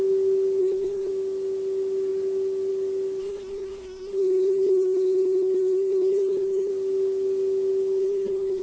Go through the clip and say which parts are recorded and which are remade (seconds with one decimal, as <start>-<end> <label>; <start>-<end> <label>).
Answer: 0.0-0.6 recorded; 0.6-1.1 remade; 1.1-3.2 recorded; 3.2-6.7 remade; 6.7-8.0 recorded; 8.0-8.6 remade